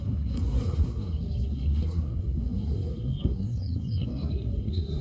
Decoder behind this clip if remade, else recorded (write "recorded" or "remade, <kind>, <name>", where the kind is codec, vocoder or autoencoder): remade, codec, SNAC